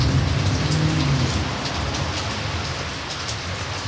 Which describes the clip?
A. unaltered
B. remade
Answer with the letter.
A